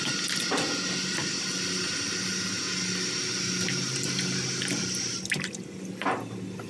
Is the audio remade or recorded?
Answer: recorded